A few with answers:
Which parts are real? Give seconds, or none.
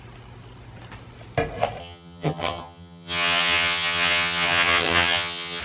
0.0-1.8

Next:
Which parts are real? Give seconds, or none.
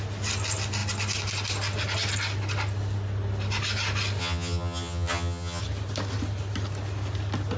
0.0-4.2; 5.6-7.6